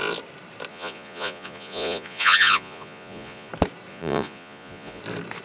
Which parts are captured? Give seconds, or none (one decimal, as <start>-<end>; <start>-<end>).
0.0-0.7; 3.5-3.9; 5.0-5.4